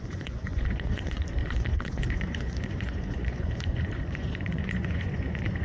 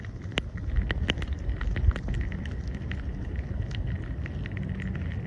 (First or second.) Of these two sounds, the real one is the second